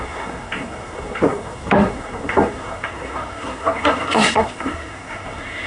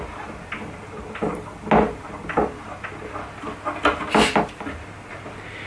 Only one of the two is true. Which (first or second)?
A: second